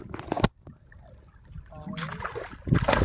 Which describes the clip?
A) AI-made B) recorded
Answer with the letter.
B